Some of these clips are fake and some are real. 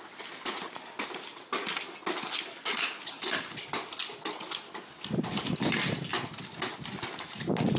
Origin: real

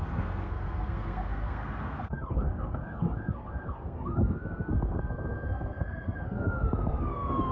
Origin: fake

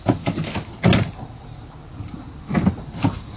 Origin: real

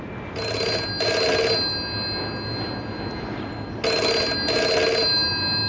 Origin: real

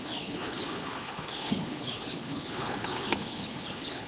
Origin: fake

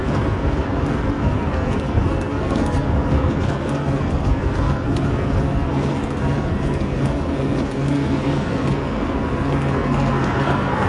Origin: fake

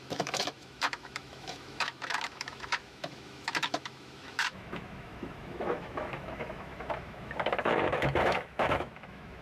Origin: fake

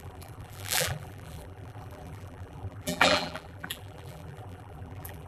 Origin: fake